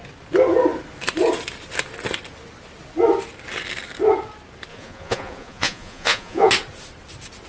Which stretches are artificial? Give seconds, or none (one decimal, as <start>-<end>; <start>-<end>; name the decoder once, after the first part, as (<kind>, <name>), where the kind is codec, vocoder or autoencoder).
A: 4.7-6.5 (vocoder, Vocos)